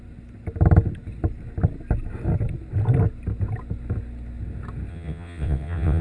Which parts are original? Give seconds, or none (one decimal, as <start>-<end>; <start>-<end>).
0.0-4.9